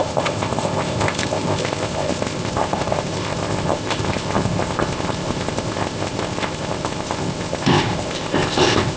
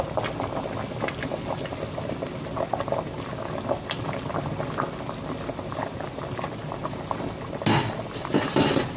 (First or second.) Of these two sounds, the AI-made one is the first